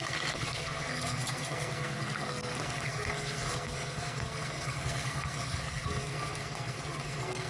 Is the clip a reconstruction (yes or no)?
yes